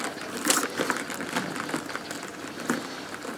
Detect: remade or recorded recorded